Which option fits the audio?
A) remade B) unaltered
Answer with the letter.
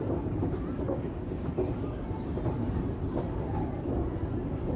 B